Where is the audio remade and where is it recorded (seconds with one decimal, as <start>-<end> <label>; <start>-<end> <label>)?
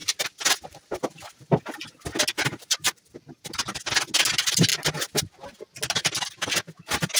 0.0-7.2 recorded